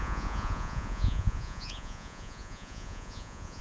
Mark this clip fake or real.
fake